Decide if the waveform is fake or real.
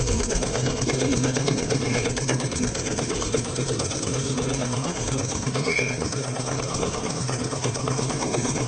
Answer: fake